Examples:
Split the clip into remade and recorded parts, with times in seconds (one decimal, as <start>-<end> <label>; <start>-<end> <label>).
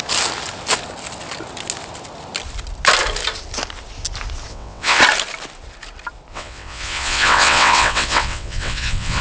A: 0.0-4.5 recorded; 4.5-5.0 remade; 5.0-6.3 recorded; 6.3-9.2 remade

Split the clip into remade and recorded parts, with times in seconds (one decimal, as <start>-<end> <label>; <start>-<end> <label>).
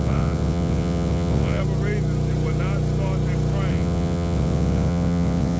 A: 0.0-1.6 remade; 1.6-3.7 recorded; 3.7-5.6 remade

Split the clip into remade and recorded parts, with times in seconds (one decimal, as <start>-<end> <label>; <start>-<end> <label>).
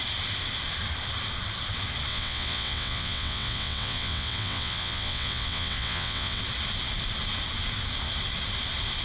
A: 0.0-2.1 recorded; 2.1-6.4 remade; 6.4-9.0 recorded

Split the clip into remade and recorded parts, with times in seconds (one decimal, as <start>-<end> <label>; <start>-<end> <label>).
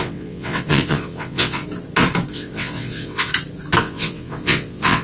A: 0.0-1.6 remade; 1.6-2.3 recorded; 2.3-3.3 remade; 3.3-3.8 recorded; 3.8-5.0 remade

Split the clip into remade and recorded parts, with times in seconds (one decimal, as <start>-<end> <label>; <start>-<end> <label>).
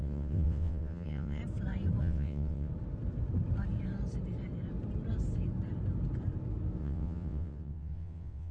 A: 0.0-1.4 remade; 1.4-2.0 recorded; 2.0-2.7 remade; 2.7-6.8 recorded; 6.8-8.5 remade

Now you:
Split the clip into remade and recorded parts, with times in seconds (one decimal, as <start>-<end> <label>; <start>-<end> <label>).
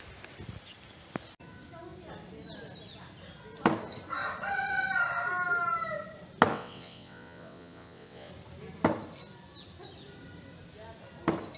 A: 0.0-6.5 recorded; 6.5-8.3 remade; 8.3-11.6 recorded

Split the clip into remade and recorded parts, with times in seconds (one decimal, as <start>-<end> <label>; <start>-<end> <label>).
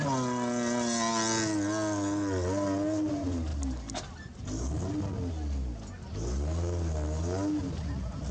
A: 0.0-8.3 recorded